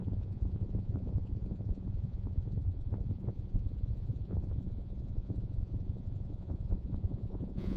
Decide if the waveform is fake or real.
fake